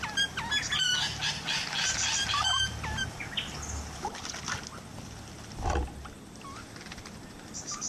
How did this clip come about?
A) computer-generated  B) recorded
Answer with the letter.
B